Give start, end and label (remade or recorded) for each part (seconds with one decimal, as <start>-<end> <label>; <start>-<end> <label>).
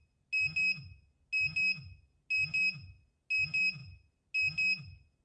0.0-5.2 recorded